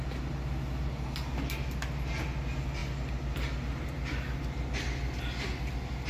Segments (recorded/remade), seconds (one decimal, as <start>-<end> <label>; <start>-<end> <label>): 0.0-6.1 recorded